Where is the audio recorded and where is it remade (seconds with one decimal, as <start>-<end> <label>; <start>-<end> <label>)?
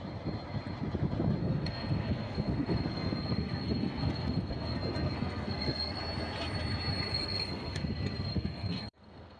0.0-1.4 recorded; 1.4-6.0 remade; 6.0-7.1 recorded; 7.1-7.9 remade; 7.9-8.3 recorded; 8.3-9.4 remade